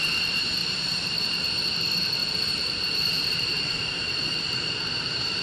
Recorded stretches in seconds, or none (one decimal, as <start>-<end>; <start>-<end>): 0.0-0.6; 1.3-2.2